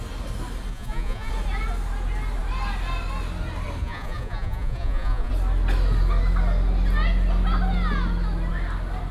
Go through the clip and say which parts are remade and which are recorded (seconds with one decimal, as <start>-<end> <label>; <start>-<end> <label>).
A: 0.0-0.7 recorded; 0.7-1.3 remade; 1.3-3.8 recorded; 3.8-5.3 remade; 5.3-9.1 recorded